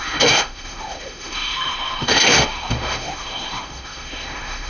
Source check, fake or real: fake